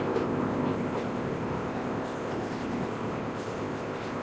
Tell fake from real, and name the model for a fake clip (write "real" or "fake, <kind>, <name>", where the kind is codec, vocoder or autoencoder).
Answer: fake, codec, ZipCodec